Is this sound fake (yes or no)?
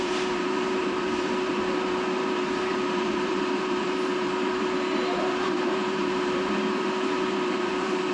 yes